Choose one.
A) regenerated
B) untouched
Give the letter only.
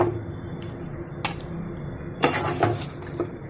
B